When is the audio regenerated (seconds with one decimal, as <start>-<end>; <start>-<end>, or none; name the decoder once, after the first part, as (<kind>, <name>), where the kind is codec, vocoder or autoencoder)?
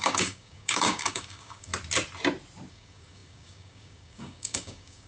0.0-1.7 (codec, DAC); 2.7-5.1